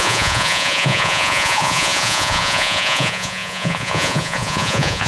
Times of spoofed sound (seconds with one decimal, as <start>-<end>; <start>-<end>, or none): 0.0-5.1

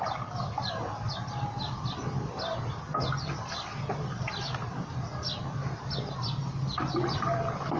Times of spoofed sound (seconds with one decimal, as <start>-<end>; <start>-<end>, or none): none

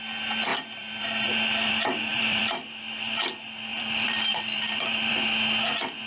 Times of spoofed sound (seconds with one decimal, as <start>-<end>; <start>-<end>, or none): 0.5-1.7; 2.1-3.3; 3.7-5.1

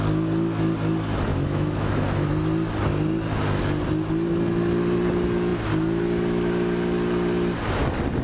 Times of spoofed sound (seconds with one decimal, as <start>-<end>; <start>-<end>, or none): 1.3-2.3